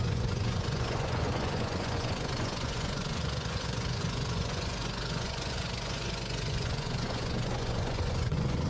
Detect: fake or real fake